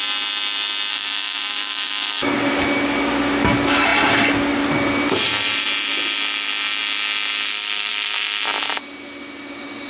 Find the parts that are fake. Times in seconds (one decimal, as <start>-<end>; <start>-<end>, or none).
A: 0.9-2.5